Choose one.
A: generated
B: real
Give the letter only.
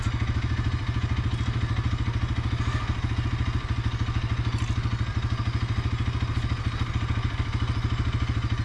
B